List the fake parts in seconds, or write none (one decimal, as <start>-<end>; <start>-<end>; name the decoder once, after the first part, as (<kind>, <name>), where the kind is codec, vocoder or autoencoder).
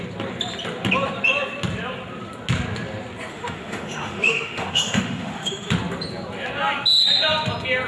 3.3-5.7 (autoencoder, DAC-VAE)